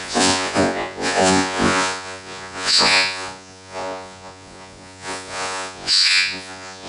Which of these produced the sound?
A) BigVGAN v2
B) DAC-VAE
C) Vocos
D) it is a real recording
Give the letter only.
C